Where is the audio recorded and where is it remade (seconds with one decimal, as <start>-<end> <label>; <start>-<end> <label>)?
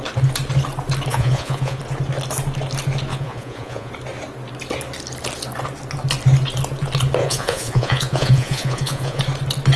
0.0-1.1 recorded; 1.1-1.8 remade; 1.8-3.1 recorded; 3.1-3.9 remade; 3.9-7.2 recorded; 7.2-9.2 remade; 9.2-9.8 recorded